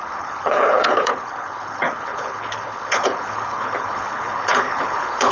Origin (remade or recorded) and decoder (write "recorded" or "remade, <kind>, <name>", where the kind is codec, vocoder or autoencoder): remade, codec, HILCodec